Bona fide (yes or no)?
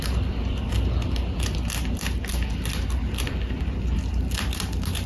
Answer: yes